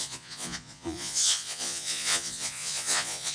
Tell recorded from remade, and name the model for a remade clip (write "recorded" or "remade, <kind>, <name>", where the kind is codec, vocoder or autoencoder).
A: remade, vocoder, Vocos